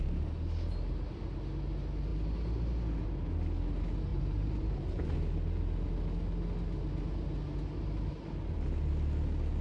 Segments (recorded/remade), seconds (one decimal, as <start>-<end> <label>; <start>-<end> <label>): 0.0-4.1 recorded; 4.1-5.1 remade; 5.1-9.6 recorded